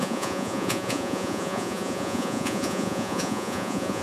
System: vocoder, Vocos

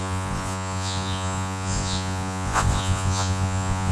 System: vocoder, Vocos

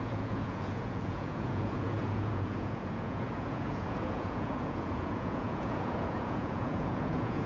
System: vocoder, Vocos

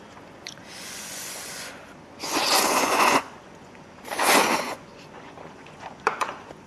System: vocoder, Vocos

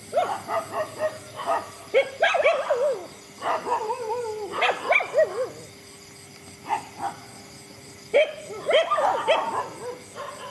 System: none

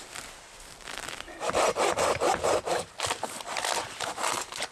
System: none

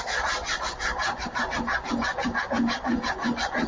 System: none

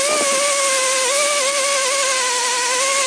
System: none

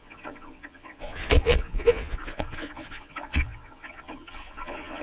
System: vocoder, Vocos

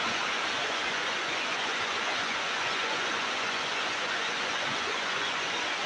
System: vocoder, Vocos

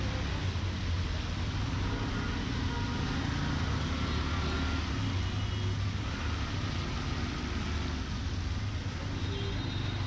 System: none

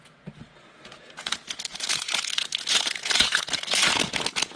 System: vocoder, Vocos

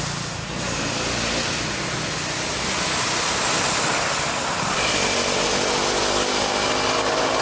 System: none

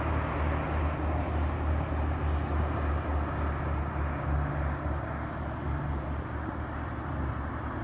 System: none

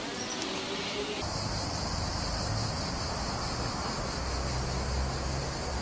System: none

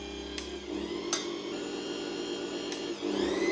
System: none